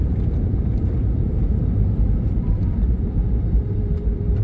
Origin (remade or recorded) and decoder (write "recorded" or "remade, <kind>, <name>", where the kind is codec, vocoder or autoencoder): remade, vocoder, BigVGAN v2